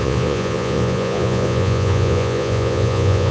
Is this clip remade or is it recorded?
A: remade